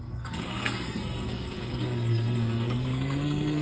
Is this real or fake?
fake